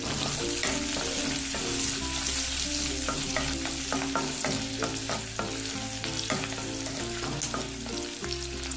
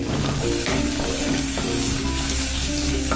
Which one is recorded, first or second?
first